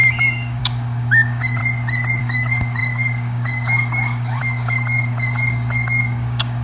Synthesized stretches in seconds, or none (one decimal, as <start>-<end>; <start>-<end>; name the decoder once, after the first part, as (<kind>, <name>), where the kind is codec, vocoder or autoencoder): 0.0-1.6 (codec, DAC); 2.2-6.6